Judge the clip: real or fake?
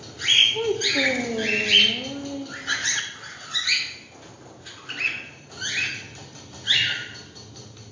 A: real